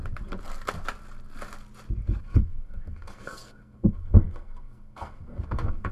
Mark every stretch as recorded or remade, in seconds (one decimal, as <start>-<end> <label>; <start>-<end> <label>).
0.0-2.2 recorded; 2.2-5.9 remade